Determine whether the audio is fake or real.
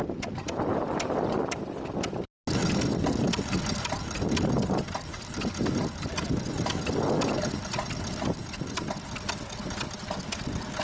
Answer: real